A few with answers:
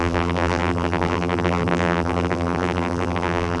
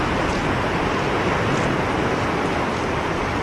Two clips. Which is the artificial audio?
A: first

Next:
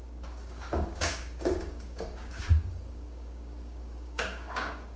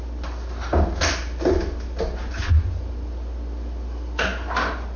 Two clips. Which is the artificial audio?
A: first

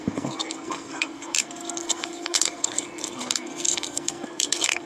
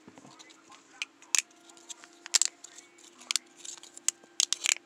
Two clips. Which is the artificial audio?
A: first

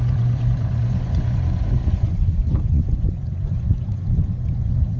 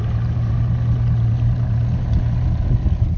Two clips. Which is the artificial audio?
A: first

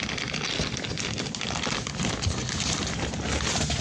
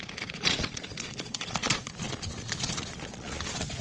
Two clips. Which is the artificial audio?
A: second